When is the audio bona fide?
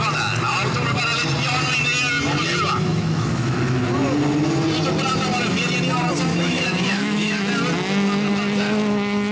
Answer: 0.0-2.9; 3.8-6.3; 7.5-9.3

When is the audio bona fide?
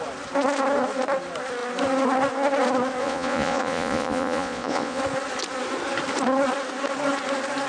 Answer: 0.0-3.0; 5.0-7.7